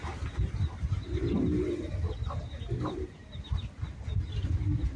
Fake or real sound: real